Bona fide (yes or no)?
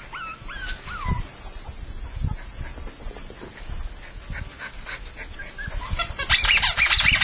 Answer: yes